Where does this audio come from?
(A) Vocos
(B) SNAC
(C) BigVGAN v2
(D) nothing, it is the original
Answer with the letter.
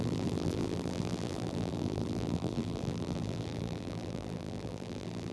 C